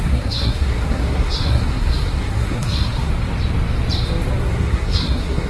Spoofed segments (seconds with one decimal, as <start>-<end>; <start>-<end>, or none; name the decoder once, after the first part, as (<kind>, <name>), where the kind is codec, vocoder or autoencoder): 0.0-3.1 (codec, SNAC); 4.4-5.5